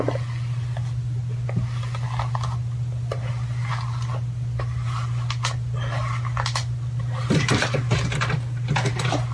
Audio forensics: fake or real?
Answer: real